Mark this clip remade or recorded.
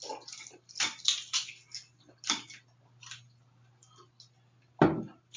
recorded